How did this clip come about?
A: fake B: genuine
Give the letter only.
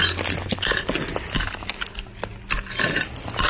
B